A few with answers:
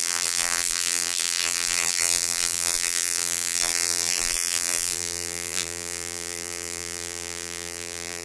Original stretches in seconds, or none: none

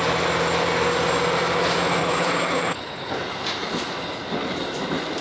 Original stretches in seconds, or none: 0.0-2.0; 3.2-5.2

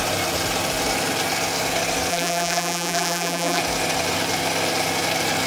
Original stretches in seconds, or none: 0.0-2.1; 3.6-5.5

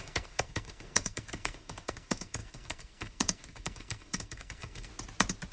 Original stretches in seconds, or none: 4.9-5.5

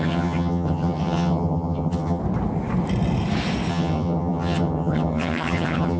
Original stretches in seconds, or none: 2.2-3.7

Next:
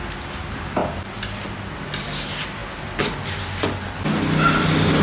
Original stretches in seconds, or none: 0.0-5.0

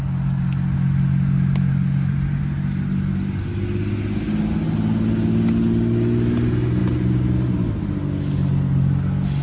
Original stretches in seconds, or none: 0.0-9.4